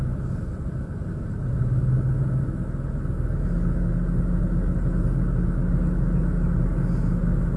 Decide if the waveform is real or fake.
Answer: real